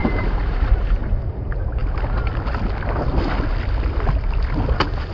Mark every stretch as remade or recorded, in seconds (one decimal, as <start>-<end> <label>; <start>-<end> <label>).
0.0-1.0 remade; 1.0-5.1 recorded